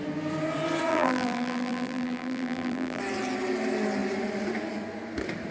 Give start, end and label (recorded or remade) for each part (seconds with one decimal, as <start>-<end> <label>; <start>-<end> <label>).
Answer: 0.0-0.9 recorded; 0.9-3.0 remade; 3.0-5.5 recorded